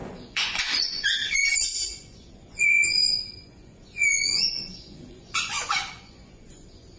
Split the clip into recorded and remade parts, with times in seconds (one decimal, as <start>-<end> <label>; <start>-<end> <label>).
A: 0.0-7.0 remade